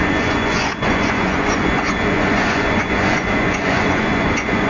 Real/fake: fake